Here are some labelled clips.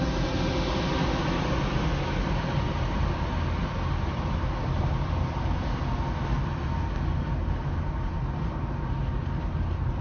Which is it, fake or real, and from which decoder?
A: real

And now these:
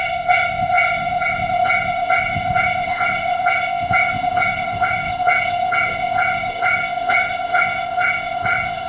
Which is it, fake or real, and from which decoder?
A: fake, codec, ZipCodec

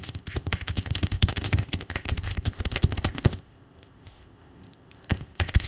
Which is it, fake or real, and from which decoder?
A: fake, codec, ZipCodec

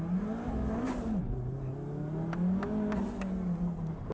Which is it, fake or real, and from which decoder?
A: real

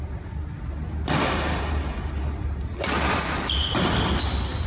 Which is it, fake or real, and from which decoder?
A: real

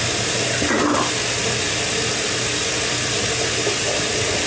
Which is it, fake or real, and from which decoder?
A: real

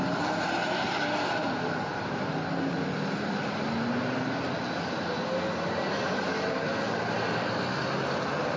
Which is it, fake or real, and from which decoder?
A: real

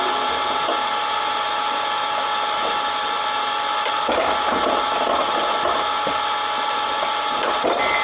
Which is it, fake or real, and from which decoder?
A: real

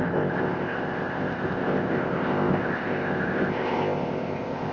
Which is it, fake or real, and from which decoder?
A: fake, codec, ZipCodec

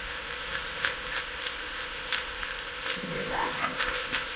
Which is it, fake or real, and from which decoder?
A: fake, codec, ZipCodec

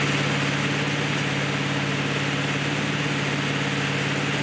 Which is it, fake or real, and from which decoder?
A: real